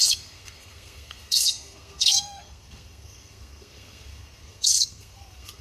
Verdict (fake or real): fake